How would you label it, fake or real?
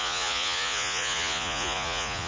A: fake